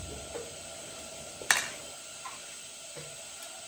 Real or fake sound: real